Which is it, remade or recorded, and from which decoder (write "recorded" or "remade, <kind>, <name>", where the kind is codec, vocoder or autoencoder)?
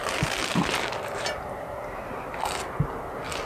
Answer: recorded